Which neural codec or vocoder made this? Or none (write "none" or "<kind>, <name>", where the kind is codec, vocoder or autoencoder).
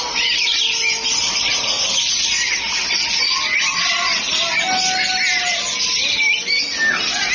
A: none